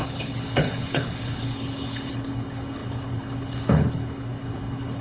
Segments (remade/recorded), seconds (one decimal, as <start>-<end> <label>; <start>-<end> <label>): 0.0-5.0 remade